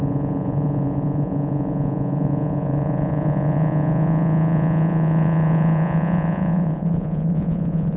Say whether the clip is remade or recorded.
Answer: remade